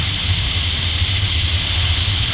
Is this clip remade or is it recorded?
remade